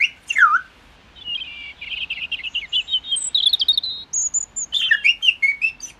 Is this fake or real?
real